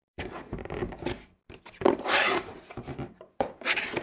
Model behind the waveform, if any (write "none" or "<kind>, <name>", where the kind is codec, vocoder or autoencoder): vocoder, BigVGAN v2